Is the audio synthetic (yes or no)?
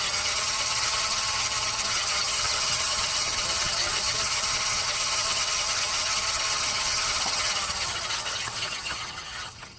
yes